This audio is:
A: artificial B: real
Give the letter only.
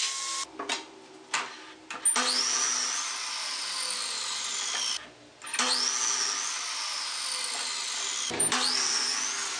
B